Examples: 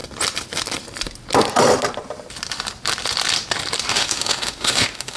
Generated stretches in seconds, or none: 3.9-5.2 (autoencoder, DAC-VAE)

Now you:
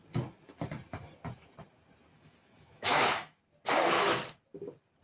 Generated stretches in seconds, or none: 2.1-3.4 (autoencoder, DAC-VAE)

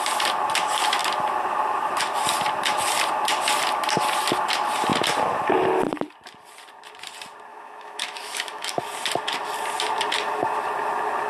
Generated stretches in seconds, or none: 7.5-8.7 (autoencoder, DAC-VAE)

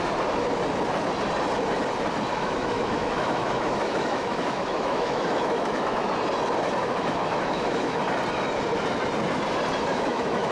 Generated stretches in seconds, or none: 2.3-6.1 (autoencoder, DAC-VAE); 6.8-8.0; 9.9-10.5

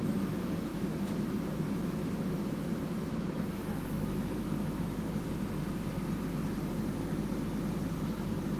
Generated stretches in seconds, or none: 0.7-5.2 (autoencoder, DAC-VAE)